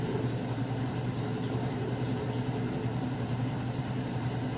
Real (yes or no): no